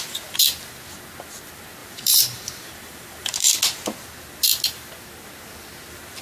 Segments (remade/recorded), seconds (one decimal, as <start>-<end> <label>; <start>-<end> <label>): 0.0-1.8 recorded; 1.8-3.5 remade; 3.5-6.2 recorded